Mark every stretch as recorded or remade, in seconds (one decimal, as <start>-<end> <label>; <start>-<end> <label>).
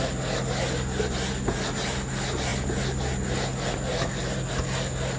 0.0-5.2 recorded